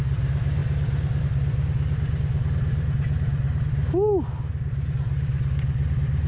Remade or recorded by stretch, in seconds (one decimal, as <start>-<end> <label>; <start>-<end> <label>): 0.0-6.3 recorded